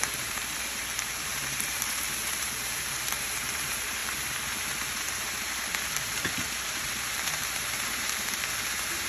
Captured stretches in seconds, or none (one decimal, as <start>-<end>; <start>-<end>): 0.4-1.1